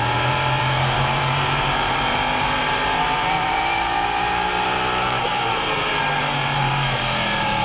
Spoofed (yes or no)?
yes